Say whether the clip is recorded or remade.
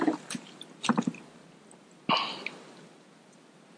recorded